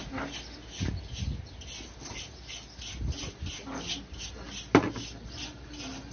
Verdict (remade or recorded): recorded